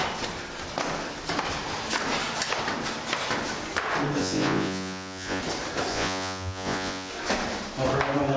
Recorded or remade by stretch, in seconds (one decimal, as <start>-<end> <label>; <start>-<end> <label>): 0.0-4.2 recorded; 4.2-5.4 remade; 5.4-5.9 recorded; 5.9-7.1 remade; 7.1-8.4 recorded